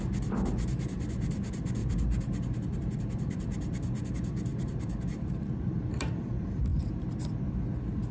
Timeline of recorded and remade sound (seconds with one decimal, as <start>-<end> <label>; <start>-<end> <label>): 0.0-1.8 recorded; 1.8-4.1 remade; 4.1-4.5 recorded; 4.5-6.1 remade; 6.1-8.1 recorded